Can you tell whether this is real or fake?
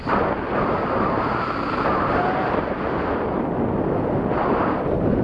real